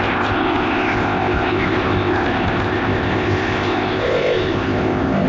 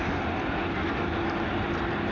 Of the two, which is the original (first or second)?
second